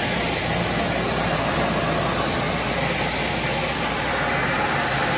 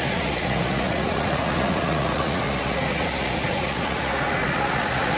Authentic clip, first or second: first